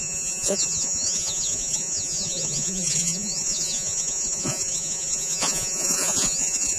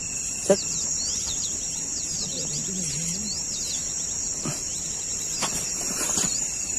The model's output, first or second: first